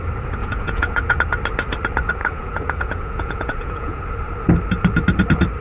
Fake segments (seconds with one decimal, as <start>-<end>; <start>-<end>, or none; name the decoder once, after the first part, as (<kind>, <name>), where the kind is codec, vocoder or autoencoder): 0.4-1.2 (vocoder, Vocos); 2.2-4.0